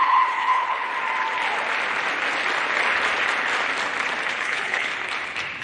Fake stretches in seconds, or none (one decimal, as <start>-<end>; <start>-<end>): 0.0-0.9; 4.3-4.9